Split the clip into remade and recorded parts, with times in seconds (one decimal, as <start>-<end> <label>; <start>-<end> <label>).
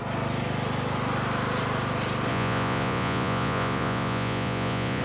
0.0-2.3 recorded; 2.3-5.0 remade